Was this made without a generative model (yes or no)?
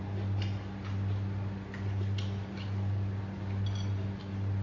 yes